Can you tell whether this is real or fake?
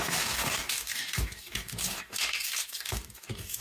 fake